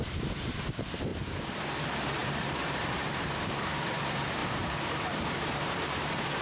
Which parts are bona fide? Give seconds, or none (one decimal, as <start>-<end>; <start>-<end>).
1.1-1.8